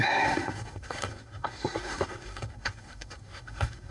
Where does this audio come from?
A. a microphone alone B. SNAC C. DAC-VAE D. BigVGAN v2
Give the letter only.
B